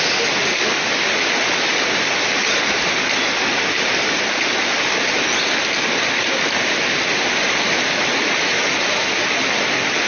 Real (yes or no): yes